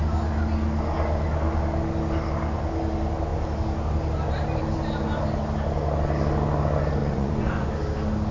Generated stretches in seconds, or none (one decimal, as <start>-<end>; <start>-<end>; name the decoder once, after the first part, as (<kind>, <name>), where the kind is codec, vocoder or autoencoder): 7.0-7.7 (vocoder, Vocos)

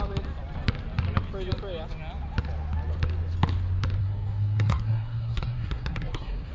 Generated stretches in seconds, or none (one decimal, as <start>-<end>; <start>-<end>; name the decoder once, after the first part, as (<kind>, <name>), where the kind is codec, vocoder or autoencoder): 4.0-6.5 (codec, SNAC)